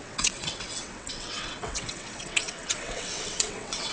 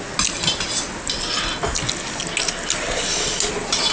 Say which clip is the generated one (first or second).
first